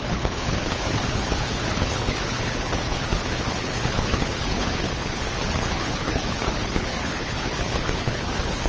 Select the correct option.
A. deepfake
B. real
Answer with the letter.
A